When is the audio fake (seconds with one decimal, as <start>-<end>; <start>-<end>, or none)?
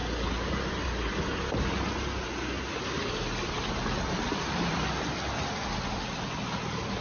none